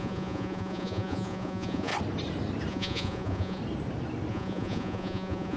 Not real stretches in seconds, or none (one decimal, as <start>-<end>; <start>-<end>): 0.0-1.9; 2.7-3.6; 4.3-5.6